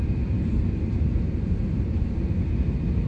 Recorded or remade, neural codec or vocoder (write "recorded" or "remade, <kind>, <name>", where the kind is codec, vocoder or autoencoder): remade, vocoder, BigVGAN v2